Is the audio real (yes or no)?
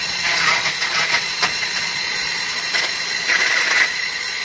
no